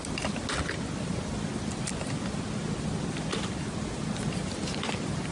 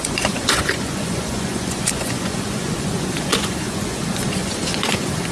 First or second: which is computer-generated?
second